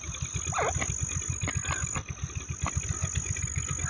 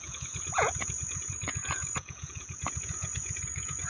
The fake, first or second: second